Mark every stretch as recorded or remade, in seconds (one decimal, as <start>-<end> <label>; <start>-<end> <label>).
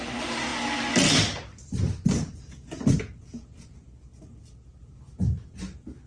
0.0-6.1 recorded